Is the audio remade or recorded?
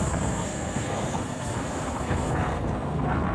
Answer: remade